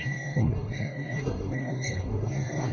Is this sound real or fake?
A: fake